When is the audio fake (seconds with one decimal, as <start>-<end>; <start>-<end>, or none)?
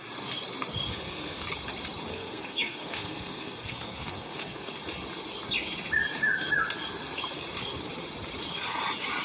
0.9-1.4; 2.1-4.7